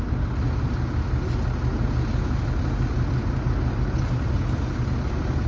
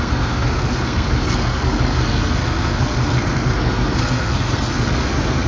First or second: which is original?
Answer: first